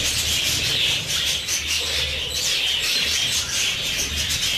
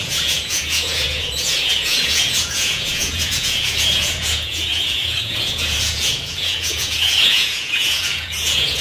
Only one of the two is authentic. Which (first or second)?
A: first